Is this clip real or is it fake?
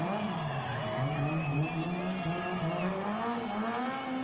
real